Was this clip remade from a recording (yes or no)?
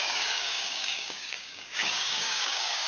yes